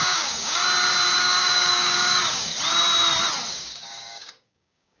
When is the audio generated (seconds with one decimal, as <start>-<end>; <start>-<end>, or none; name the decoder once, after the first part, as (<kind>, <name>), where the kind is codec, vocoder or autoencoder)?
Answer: 0.0-0.6 (codec, DAC); 1.2-2.5; 3.5-5.0